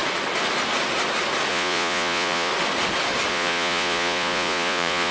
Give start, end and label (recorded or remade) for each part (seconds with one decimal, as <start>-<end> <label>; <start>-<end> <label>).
0.0-1.5 recorded; 1.5-2.5 remade; 2.5-3.3 recorded; 3.3-5.1 remade